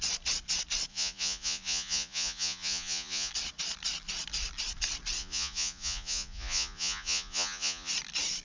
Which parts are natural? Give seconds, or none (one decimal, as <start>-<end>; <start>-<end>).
0.0-0.9; 3.3-5.2; 7.9-8.4